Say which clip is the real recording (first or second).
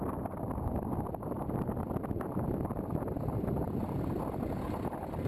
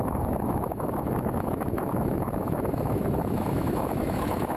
first